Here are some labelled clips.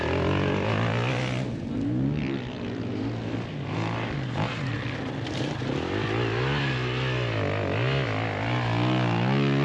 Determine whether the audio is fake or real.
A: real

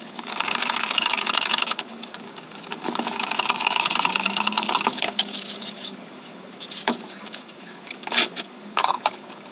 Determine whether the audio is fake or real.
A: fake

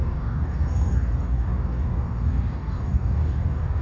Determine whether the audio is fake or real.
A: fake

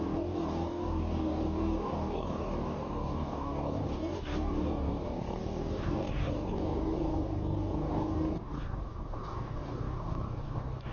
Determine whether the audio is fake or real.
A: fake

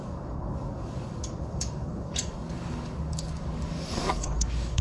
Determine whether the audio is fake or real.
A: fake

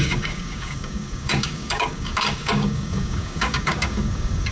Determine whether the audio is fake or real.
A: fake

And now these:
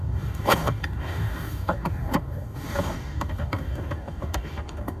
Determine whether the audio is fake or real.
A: fake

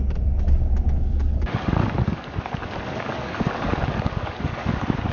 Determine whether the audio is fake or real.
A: fake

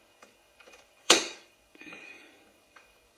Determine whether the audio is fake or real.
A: fake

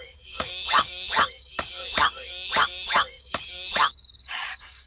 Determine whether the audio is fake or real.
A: fake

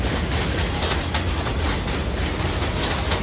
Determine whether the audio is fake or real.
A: real